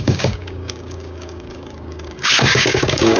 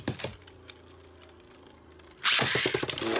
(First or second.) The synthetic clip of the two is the first